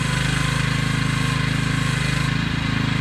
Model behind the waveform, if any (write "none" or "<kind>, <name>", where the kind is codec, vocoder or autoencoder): none